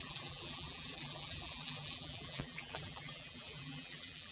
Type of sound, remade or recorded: remade